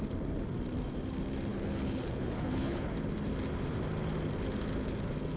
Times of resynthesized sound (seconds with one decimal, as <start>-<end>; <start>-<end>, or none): 1.5-2.9